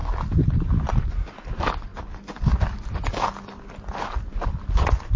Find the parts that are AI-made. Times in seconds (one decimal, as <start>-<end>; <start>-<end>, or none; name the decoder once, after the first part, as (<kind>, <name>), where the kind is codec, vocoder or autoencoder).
0.0-1.9 (vocoder, BigVGAN v2); 4.2-5.2